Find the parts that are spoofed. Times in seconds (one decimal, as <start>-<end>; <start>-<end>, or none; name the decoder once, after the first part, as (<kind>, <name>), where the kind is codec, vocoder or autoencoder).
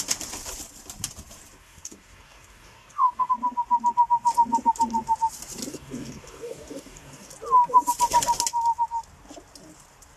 1.6-3.3 (codec, DAC); 5.7-7.3